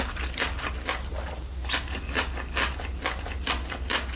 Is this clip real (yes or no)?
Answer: yes